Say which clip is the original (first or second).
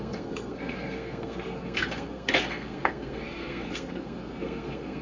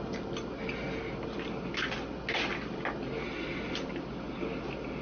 second